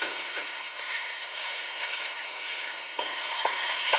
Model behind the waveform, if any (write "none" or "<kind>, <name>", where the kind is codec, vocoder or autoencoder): codec, SNAC